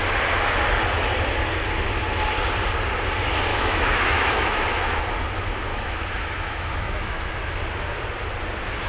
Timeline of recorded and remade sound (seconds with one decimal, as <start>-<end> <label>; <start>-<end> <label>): 0.0-3.5 recorded; 3.5-5.0 remade; 5.0-5.7 recorded; 5.7-7.3 remade; 7.3-8.9 recorded